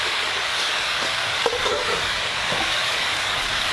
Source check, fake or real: fake